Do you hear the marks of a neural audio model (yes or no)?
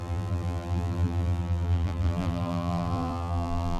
yes